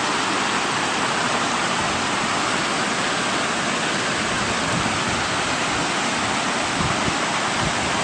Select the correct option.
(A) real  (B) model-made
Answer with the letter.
A